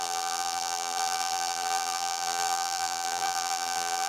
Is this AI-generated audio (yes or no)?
yes